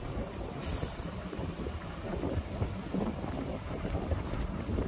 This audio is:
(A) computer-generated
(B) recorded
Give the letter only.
A